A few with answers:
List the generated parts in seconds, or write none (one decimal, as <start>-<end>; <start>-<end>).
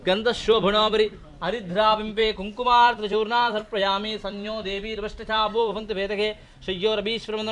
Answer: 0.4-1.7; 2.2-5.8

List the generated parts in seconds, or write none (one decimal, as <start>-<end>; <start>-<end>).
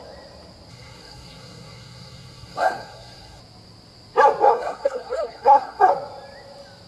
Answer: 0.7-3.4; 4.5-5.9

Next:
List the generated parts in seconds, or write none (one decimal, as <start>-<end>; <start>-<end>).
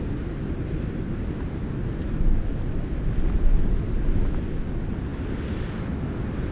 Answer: none